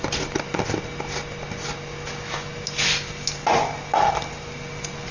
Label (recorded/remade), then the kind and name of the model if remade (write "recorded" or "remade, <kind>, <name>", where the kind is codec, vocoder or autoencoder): recorded